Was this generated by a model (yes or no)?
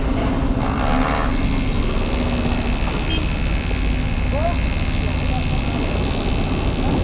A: no